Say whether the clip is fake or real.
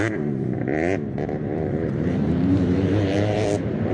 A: fake